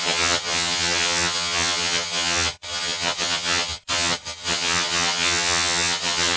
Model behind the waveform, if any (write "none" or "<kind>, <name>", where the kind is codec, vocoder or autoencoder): vocoder, HiFi-GAN